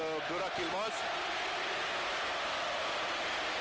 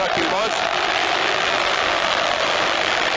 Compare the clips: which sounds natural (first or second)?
first